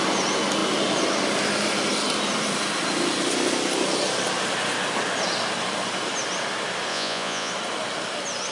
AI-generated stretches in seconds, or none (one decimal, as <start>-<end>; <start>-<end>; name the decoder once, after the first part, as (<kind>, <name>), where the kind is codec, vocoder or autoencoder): 6.9-7.5 (vocoder, Vocos)